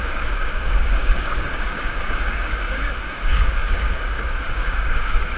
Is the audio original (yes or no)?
no